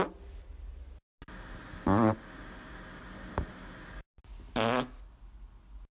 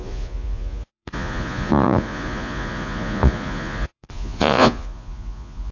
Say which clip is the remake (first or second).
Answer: second